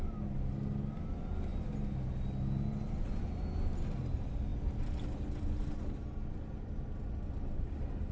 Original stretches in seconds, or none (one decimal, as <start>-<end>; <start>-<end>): 0.0-8.1